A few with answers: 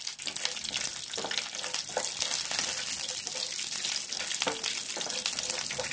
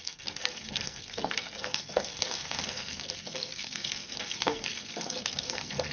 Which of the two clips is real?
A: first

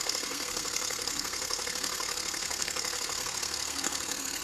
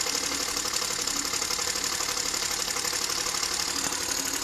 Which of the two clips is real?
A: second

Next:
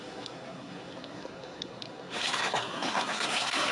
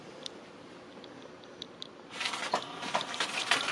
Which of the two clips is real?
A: second